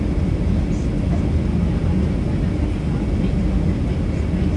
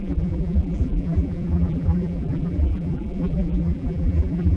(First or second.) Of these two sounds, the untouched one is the first